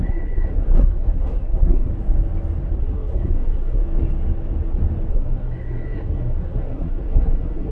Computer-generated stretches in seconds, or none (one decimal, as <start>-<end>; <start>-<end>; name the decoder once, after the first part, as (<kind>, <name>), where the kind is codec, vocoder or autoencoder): 0.0-1.9 (codec, SNAC); 2.8-3.8; 5.1-7.7